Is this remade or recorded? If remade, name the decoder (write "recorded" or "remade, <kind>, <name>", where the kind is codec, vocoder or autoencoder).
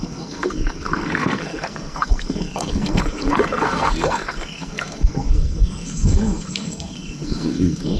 remade, codec, SNAC